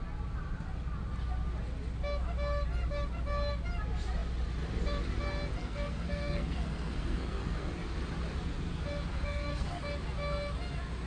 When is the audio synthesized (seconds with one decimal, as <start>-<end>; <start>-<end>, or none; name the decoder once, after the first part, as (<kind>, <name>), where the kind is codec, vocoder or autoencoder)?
5.6-7.7 (codec, SNAC); 9.1-9.8